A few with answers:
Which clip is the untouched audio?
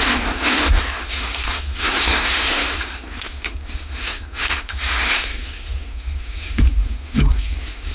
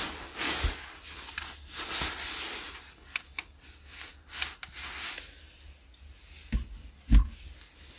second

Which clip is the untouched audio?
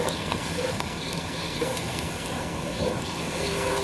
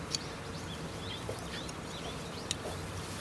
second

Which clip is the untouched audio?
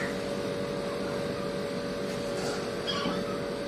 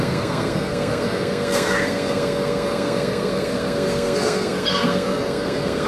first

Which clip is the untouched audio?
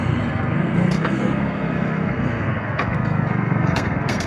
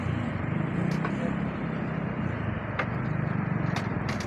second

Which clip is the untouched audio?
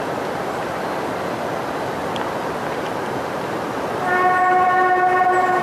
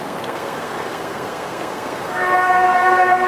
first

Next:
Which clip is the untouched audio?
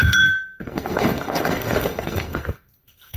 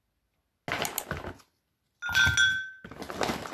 second